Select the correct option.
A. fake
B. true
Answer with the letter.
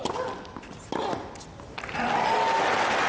B